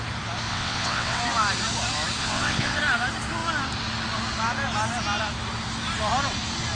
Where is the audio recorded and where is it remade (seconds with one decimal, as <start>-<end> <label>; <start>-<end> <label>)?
0.0-0.5 recorded; 0.5-1.2 remade; 1.2-2.2 recorded; 2.2-2.8 remade; 2.8-6.7 recorded